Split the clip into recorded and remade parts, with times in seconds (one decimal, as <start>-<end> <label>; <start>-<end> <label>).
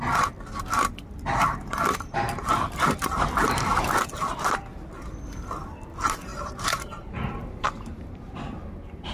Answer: 0.0-6.3 recorded; 6.3-8.3 remade; 8.3-9.1 recorded